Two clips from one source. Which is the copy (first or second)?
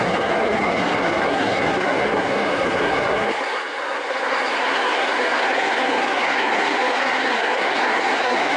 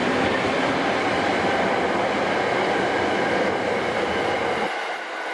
first